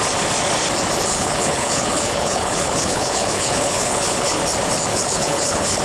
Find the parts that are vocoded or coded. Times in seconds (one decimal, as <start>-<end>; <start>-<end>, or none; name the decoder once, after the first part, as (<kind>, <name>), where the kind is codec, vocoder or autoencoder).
1.1-4.4 (codec, HILCodec); 4.9-5.8